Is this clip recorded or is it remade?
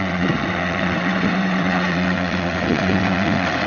remade